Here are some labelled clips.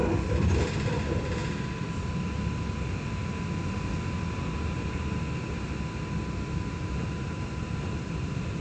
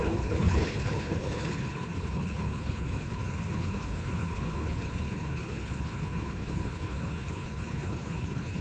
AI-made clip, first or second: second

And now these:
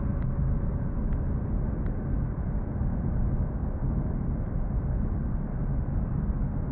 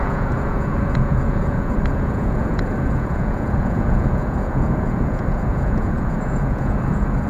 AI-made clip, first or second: second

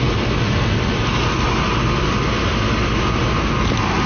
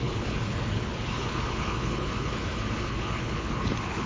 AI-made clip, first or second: second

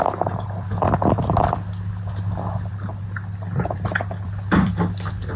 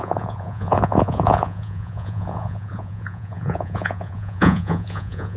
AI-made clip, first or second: second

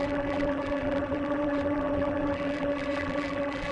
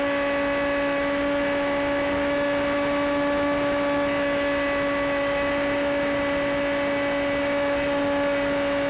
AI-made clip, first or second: first